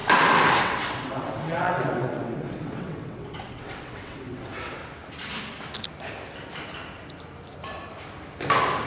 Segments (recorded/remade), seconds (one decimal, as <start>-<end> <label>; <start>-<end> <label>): 0.0-0.6 recorded; 0.6-4.8 remade; 4.8-8.9 recorded